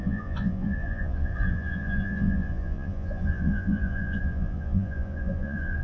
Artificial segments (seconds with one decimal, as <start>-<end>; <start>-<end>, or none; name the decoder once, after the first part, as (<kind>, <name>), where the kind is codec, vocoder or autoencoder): 0.0-5.8 (vocoder, Vocos)